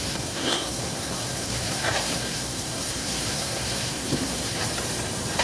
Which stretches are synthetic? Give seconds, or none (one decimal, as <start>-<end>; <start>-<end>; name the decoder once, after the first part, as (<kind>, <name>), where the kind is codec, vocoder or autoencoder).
0.0-4.6 (codec, SNAC)